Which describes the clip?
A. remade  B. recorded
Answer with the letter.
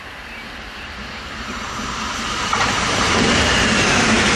A